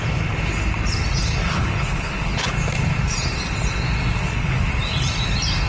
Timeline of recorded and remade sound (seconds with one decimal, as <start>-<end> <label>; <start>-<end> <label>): 0.0-1.4 recorded; 1.4-2.5 remade; 2.5-4.2 recorded; 4.2-4.7 remade; 4.7-5.7 recorded